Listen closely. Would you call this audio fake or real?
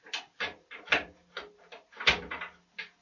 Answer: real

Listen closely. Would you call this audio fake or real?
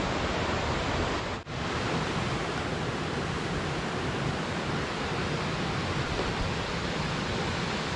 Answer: real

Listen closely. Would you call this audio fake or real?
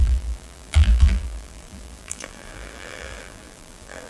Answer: fake